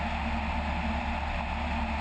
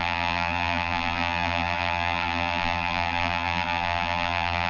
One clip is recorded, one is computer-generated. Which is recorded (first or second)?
first